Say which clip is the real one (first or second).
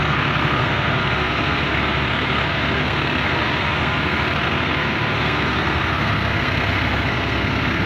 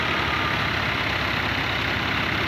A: second